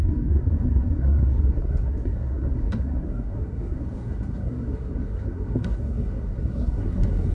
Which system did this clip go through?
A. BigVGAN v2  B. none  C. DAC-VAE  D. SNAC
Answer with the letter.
D